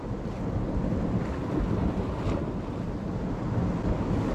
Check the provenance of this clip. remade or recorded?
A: recorded